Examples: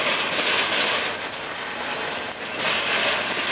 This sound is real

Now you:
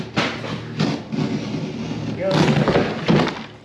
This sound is real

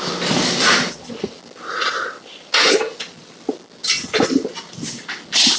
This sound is real